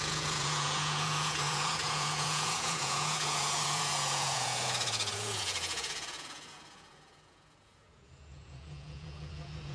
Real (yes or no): no